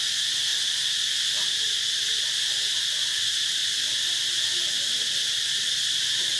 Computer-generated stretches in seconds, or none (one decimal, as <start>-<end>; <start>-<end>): 0.0-3.6; 4.6-6.4